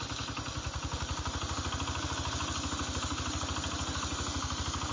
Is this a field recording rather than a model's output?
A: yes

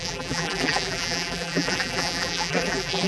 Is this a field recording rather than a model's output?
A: no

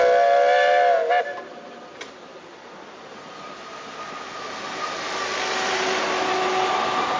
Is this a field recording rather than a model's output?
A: yes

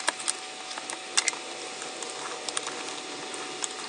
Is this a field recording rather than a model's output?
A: yes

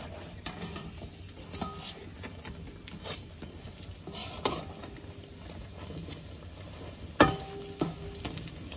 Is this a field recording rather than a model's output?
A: yes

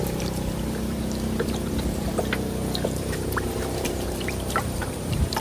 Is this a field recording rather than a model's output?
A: no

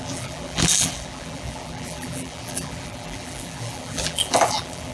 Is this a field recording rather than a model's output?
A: no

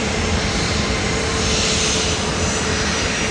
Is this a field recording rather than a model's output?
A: no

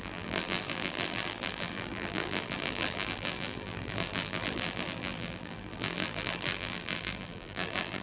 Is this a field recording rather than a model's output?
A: no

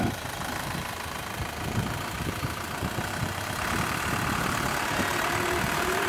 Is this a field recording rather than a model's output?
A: no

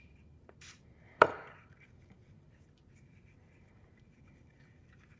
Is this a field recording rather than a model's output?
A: no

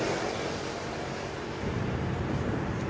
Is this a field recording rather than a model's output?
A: no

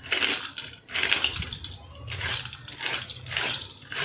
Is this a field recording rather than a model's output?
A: no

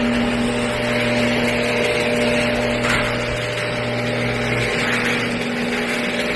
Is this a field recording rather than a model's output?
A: yes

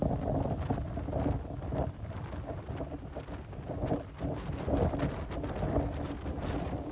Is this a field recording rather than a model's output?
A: yes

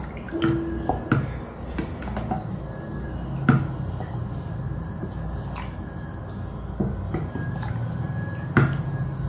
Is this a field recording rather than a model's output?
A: yes